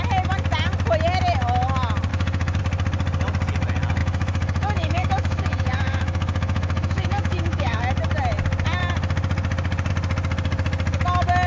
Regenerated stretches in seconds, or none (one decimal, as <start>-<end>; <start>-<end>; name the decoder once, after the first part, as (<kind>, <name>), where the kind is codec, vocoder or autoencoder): 2.1-2.6 (autoencoder, DAC-VAE); 4.0-7.8